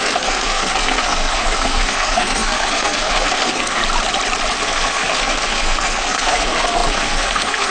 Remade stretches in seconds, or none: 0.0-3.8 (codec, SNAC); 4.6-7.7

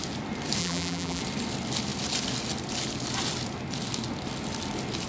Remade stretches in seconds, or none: 0.6-1.2 (vocoder, BigVGAN v2)

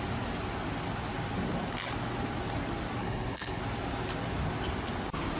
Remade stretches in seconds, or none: 3.0-3.6 (codec, HILCodec)

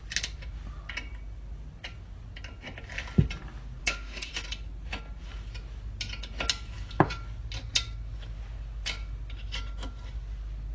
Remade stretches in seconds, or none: 3.8-4.3 (autoencoder, DAC-VAE)

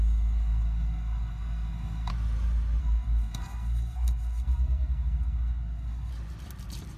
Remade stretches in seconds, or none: 0.0-2.1 (codec, SNAC); 2.8-6.1